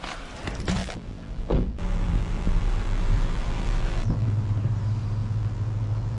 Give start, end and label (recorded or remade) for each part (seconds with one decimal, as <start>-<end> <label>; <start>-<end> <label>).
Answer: 0.0-0.8 recorded; 0.8-4.5 remade; 4.5-5.2 recorded; 5.2-6.2 remade